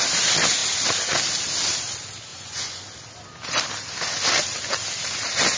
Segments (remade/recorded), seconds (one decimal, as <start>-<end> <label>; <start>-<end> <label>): 0.0-2.3 recorded; 2.3-2.8 remade; 2.8-5.6 recorded